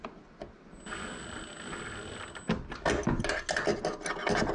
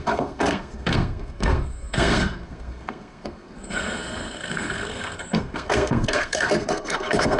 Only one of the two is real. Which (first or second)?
first